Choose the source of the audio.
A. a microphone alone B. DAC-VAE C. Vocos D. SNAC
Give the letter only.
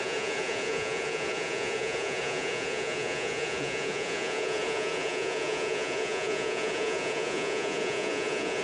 C